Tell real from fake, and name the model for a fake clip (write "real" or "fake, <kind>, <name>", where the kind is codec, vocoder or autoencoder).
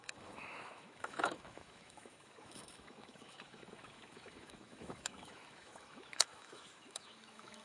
fake, autoencoder, DAC-VAE